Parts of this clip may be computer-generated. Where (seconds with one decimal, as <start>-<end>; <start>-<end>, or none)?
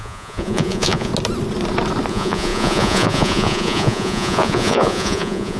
0.0-1.1; 2.1-5.6